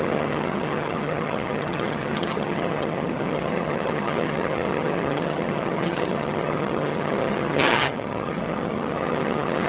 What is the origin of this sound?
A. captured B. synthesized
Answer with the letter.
B